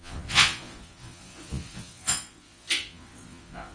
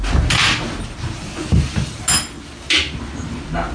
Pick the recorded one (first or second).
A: second